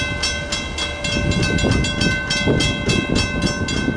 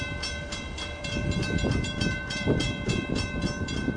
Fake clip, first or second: second